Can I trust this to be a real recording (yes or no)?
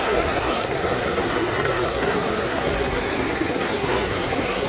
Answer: no